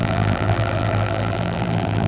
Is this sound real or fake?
fake